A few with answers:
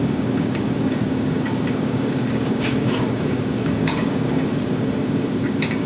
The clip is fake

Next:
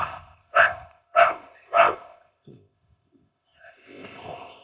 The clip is fake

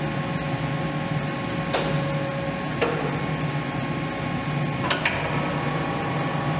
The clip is real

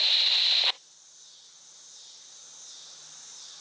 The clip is real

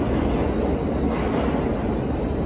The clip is real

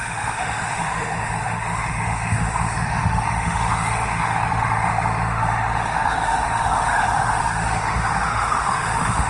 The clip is fake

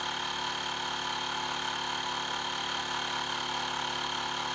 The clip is real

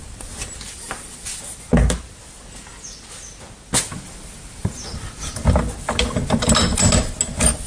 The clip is real